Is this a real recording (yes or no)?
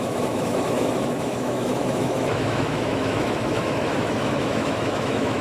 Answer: no